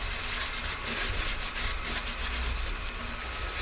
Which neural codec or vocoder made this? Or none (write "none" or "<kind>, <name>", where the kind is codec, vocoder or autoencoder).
none